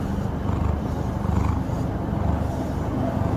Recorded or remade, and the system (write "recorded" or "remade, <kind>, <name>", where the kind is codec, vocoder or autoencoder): recorded